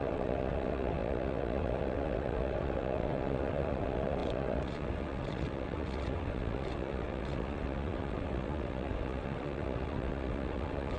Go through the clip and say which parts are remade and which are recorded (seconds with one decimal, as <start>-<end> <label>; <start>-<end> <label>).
0.0-11.0 remade